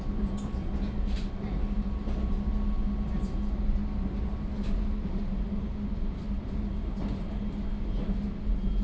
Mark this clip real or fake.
real